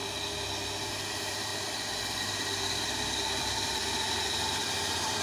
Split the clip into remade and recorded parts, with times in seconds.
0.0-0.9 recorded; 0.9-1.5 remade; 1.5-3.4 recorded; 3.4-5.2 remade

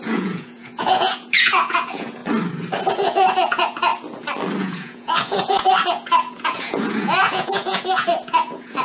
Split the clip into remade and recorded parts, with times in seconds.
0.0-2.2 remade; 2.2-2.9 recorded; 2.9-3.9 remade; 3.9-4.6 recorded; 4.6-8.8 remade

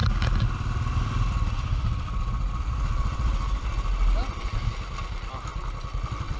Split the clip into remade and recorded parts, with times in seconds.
0.0-6.4 recorded

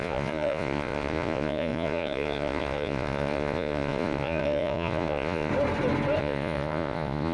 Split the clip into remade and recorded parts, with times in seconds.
0.0-5.5 remade; 5.5-6.2 recorded; 6.2-7.3 remade

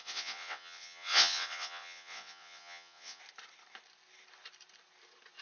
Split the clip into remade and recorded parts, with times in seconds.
0.0-3.2 remade; 3.2-5.4 recorded